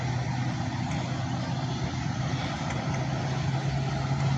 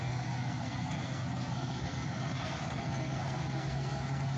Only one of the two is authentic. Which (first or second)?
first